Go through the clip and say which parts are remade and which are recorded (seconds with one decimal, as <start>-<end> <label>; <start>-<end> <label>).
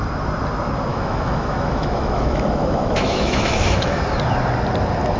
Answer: 0.0-0.9 recorded; 0.9-4.0 remade; 4.0-5.2 recorded